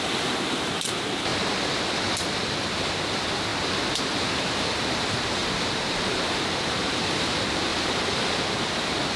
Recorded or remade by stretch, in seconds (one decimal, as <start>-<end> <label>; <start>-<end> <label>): 0.0-1.3 remade; 1.3-3.1 recorded; 3.1-3.5 remade; 3.5-4.0 recorded; 4.0-5.4 remade; 5.4-6.0 recorded; 6.0-7.7 remade; 7.7-8.6 recorded; 8.6-9.2 remade